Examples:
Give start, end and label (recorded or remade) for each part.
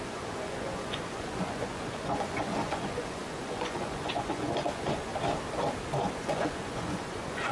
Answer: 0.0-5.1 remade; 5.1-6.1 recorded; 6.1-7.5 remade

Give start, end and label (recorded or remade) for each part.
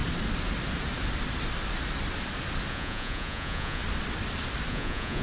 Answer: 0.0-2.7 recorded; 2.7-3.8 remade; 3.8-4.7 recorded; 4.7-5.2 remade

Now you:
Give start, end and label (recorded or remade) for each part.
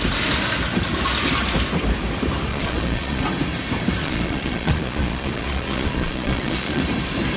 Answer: 0.0-2.5 recorded; 2.5-3.2 remade; 3.2-4.0 recorded; 4.0-6.8 remade; 6.8-7.4 recorded